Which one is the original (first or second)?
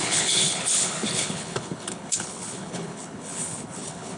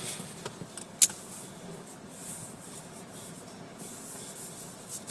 second